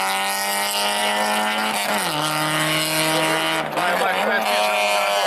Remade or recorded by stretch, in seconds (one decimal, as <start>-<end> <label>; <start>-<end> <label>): 0.0-5.3 recorded